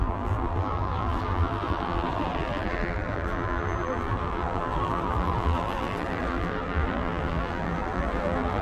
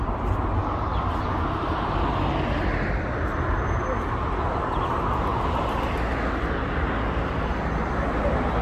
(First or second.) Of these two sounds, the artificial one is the first